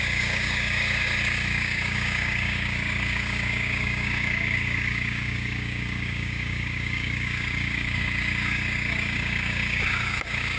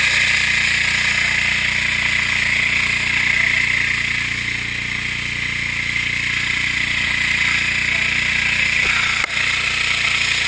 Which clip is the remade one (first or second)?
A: first